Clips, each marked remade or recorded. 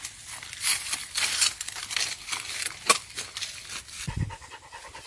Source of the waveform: recorded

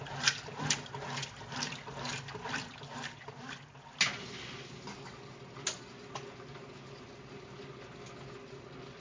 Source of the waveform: recorded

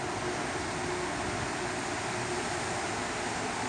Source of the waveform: recorded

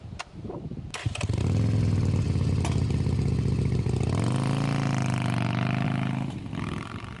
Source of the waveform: recorded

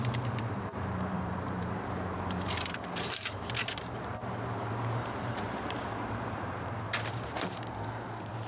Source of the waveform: remade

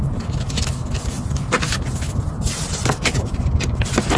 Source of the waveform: recorded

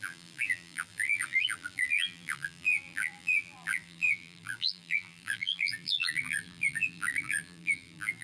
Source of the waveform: remade